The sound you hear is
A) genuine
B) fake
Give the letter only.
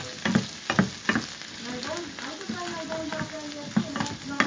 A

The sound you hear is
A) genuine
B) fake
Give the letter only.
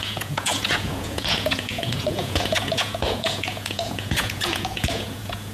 B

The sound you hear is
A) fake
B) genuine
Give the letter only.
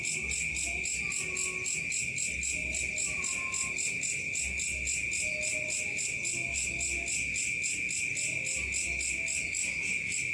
B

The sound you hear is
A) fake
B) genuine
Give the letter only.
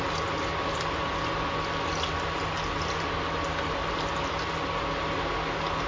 B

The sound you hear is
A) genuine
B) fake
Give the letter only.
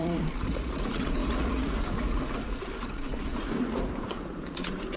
B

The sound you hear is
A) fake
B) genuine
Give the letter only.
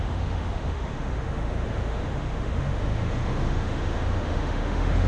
A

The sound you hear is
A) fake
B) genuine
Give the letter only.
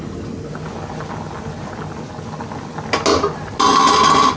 B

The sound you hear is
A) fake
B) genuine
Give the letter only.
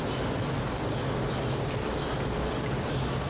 A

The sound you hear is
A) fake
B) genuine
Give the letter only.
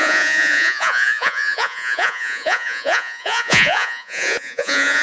A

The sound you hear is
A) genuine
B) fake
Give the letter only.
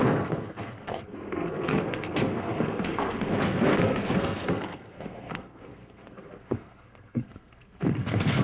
B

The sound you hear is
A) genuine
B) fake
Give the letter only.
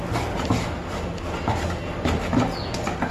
A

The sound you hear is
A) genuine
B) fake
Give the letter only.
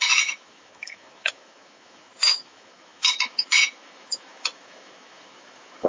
B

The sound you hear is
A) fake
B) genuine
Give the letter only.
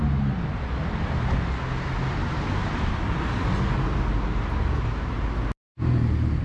B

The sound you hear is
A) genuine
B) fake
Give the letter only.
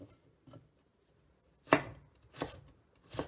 A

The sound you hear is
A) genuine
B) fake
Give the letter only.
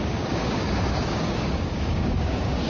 B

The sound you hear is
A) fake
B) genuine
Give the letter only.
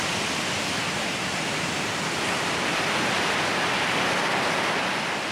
B